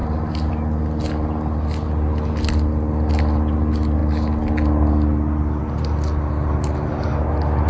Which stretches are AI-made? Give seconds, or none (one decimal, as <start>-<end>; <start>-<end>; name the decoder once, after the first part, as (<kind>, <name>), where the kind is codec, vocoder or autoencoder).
none